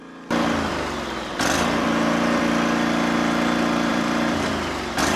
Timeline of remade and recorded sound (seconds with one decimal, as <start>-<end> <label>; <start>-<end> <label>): 0.0-3.9 recorded; 3.9-5.2 remade

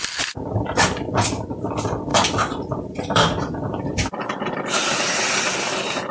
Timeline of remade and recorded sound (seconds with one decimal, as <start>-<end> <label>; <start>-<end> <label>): 0.0-2.1 recorded; 2.1-5.4 remade; 5.4-6.1 recorded